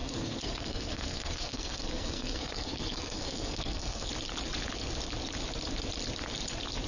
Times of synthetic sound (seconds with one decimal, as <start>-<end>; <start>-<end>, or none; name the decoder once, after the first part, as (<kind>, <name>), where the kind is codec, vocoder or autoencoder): 0.0-4.1 (codec, SNAC)

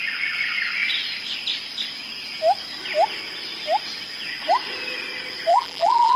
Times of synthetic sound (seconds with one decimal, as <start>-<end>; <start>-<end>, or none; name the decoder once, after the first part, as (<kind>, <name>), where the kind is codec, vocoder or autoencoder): 5.5-6.2 (vocoder, BigVGAN v2)

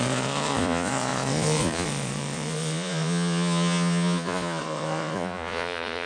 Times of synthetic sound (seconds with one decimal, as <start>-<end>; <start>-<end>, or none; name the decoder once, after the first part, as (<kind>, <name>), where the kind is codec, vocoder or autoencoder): 0.0-6.1 (vocoder, Vocos)